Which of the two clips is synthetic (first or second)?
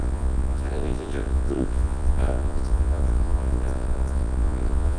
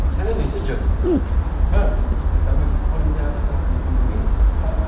first